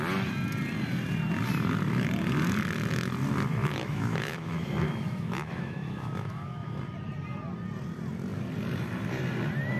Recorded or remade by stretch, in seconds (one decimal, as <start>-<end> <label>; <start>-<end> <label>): 0.0-3.6 recorded; 3.6-6.8 remade; 6.8-9.8 recorded